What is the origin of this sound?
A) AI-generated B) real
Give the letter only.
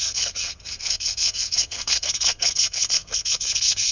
A